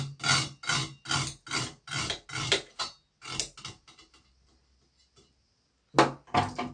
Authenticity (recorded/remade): recorded